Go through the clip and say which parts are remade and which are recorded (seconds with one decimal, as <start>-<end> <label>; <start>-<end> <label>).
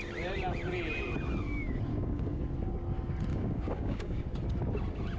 0.0-1.9 recorded; 1.9-2.4 remade; 2.4-3.3 recorded; 3.3-4.2 remade; 4.2-5.2 recorded